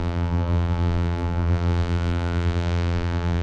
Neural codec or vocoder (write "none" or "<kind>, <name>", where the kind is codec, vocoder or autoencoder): vocoder, BigVGAN v2